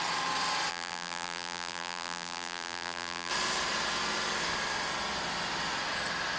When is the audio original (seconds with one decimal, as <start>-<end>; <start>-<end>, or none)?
0.0-0.7; 3.3-6.4